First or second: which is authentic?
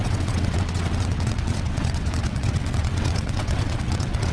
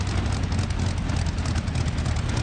second